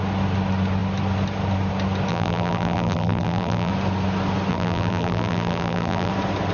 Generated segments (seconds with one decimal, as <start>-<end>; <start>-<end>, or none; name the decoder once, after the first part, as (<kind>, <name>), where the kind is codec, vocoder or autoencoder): 2.1-3.7 (vocoder, BigVGAN v2); 4.5-6.1